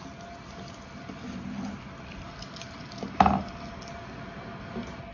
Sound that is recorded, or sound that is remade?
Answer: recorded